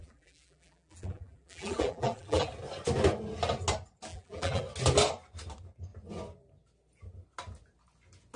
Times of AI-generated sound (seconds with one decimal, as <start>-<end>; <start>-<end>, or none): 0.0-2.5; 4.1-4.6